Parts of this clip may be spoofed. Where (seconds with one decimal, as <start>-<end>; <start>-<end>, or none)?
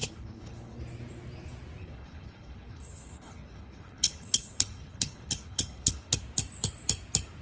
0.0-0.8; 1.8-6.2